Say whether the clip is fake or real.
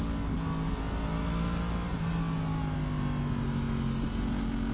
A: real